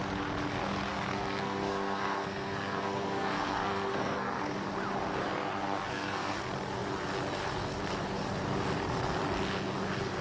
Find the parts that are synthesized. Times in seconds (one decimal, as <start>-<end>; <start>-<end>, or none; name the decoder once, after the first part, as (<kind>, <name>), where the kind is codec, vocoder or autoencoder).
0.9-4.4 (codec, SNAC); 5.2-6.3